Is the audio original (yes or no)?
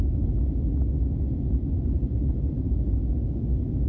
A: yes